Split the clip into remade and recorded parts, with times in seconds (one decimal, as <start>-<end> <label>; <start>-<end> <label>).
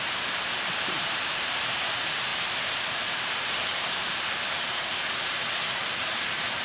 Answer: 0.0-4.9 remade; 4.9-6.0 recorded; 6.0-6.6 remade